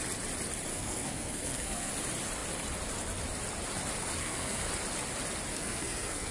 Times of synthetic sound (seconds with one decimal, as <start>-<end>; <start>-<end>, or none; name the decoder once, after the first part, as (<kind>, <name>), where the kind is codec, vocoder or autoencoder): 0.7-1.9 (codec, SNAC); 4.2-4.7; 5.5-6.3